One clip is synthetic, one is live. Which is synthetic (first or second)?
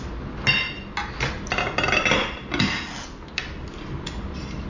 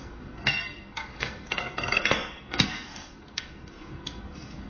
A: second